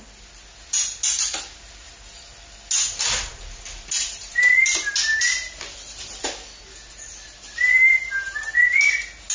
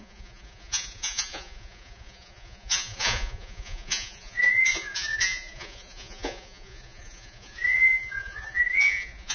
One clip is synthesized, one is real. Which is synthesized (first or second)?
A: second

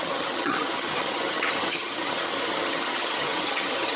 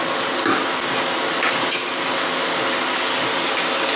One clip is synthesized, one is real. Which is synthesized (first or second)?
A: first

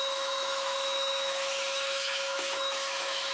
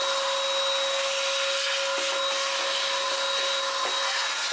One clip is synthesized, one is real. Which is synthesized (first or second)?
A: first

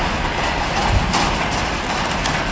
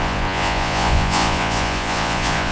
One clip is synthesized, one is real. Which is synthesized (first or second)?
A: second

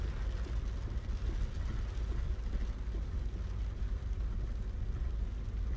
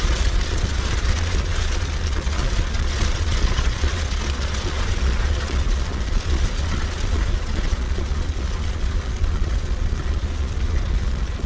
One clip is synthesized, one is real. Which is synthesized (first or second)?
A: second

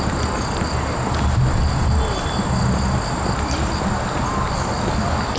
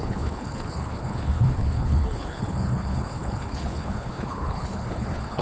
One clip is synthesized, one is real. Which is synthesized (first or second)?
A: second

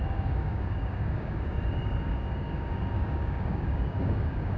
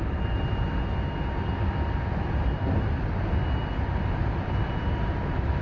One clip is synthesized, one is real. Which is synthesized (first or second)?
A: first